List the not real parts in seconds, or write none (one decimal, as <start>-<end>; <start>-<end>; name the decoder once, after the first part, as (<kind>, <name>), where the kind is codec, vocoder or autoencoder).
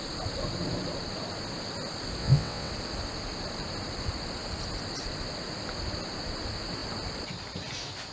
2.2-2.7 (vocoder, WaveNeXt)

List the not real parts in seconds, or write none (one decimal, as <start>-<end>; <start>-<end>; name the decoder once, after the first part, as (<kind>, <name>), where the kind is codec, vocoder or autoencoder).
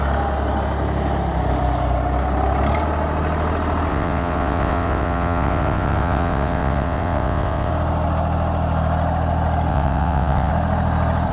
3.9-7.7 (vocoder, WaveNeXt); 9.7-10.5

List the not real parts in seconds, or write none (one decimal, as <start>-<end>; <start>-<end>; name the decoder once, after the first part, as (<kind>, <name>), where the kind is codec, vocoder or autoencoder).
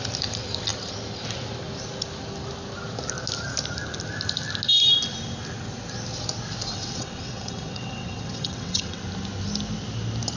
6.7-9.0 (vocoder, WaveNeXt)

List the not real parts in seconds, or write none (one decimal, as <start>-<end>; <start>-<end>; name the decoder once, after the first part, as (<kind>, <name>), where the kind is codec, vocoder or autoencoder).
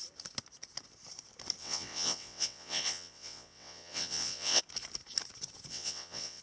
1.6-4.6 (vocoder, WaveNeXt); 5.7-6.4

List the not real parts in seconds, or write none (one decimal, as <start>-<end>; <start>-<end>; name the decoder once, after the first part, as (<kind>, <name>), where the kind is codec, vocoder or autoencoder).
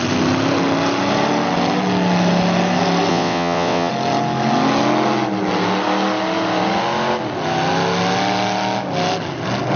3.1-3.9 (vocoder, WaveNeXt)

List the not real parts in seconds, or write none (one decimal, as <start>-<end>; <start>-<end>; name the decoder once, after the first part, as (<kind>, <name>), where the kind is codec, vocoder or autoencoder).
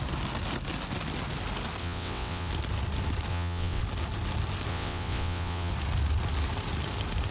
1.8-2.5 (vocoder, WaveNeXt); 3.3-3.8; 4.7-5.7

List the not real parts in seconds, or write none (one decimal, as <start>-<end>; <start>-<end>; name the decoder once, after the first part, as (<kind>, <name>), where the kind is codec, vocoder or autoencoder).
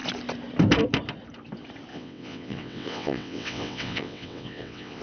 1.9-5.0 (vocoder, WaveNeXt)